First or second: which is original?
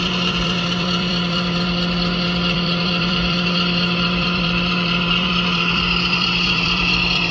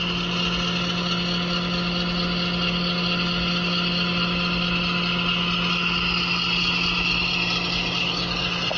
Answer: second